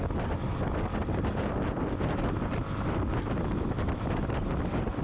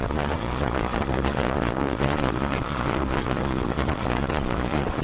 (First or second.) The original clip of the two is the first